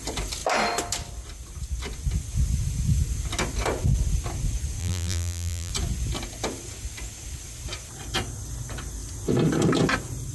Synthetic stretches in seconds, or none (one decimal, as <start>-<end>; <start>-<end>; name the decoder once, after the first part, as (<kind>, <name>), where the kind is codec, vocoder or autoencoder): 4.8-5.7 (vocoder, BigVGAN v2)